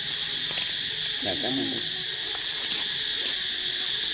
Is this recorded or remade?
recorded